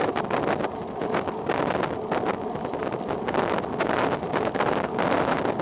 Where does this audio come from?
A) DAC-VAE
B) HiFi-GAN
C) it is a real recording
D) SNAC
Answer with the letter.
C